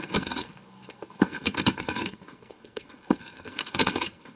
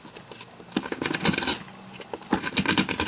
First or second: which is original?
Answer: second